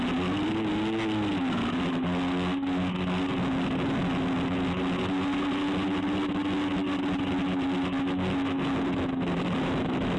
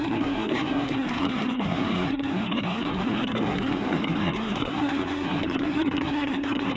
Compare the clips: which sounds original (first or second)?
first